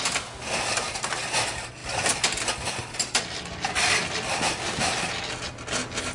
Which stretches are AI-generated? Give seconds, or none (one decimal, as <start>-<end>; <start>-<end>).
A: none